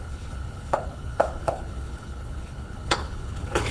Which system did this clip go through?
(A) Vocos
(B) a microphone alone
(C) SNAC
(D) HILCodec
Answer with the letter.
D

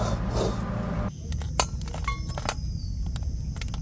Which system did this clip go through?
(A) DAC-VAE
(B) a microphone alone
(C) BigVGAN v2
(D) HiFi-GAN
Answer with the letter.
B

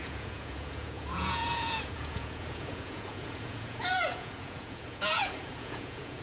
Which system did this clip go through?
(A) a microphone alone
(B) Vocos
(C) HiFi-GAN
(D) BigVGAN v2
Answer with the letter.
B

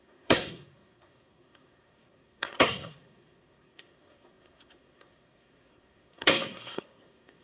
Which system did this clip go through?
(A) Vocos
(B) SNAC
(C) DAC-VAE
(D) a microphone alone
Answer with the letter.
B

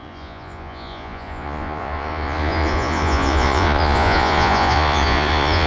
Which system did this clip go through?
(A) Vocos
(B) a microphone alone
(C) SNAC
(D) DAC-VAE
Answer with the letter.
A